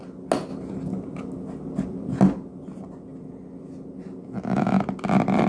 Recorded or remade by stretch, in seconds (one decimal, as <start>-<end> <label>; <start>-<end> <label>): 0.0-5.5 recorded